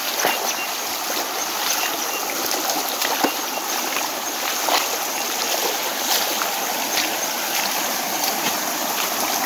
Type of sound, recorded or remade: recorded